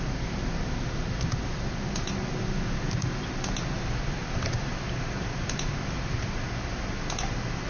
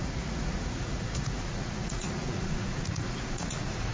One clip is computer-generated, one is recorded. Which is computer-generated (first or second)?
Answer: second